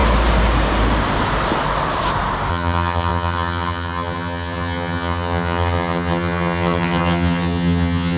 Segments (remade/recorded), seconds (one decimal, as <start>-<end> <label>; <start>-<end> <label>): 0.0-2.5 recorded; 2.5-8.2 remade